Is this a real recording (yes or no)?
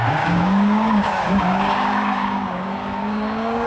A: no